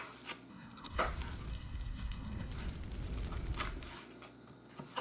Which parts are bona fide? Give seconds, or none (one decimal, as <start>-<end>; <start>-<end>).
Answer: 0.0-0.5; 1.0-1.5; 2.5-5.0